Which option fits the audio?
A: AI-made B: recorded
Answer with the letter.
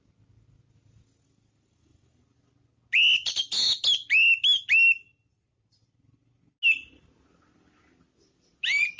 B